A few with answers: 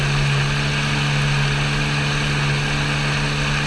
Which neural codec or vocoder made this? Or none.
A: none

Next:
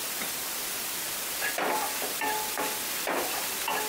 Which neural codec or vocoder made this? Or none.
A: vocoder, BigVGAN v2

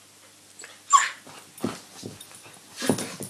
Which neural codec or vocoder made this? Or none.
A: none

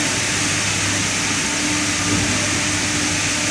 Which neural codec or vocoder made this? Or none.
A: none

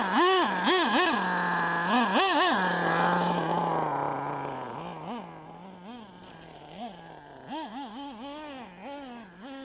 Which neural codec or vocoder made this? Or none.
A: none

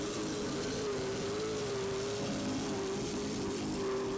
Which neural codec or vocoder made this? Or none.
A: none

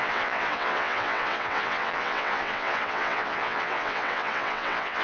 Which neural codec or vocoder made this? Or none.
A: vocoder, WaveNeXt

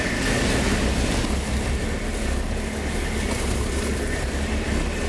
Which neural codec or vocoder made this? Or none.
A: none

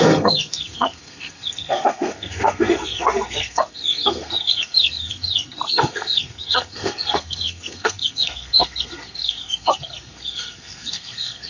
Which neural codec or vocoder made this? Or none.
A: codec, SNAC